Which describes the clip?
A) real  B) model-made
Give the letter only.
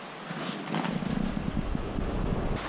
A